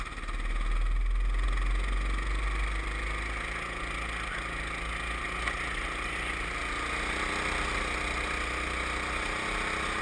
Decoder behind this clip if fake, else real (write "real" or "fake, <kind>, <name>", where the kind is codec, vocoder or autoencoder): real